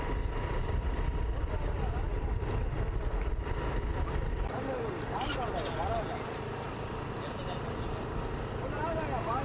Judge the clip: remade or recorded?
recorded